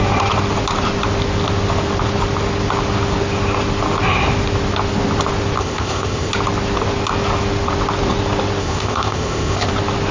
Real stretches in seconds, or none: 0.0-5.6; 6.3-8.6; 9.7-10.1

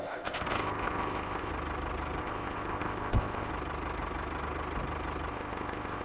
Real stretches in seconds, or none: 1.5-2.2; 3.5-5.3

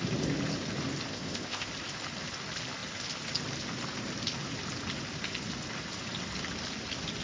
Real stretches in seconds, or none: 0.0-1.1; 1.7-7.2